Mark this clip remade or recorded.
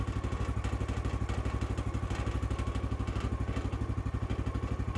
recorded